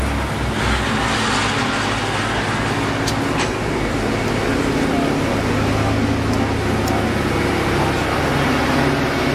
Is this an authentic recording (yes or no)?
yes